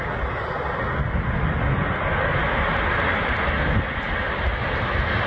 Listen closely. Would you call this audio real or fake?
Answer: real